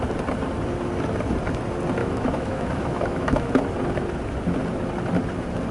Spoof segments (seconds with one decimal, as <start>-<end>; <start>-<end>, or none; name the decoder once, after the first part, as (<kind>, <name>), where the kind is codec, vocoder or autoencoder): 2.0-3.5 (autoencoder, DAC-VAE)